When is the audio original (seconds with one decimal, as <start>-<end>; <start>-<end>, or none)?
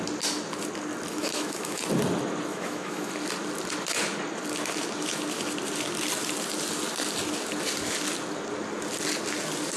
0.0-1.1; 1.8-2.5; 3.1-9.8